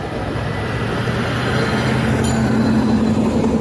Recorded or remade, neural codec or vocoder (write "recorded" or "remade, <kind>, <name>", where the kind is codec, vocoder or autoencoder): recorded